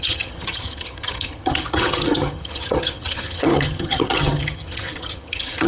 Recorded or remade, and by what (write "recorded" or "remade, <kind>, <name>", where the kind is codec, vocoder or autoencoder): remade, vocoder, HiFi-GAN